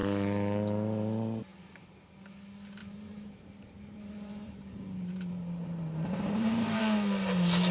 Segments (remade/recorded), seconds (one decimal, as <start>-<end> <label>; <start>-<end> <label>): 0.0-2.8 recorded; 2.8-6.8 remade; 6.8-7.7 recorded